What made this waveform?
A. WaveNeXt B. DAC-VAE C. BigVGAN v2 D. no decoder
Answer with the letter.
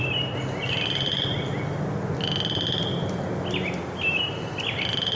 D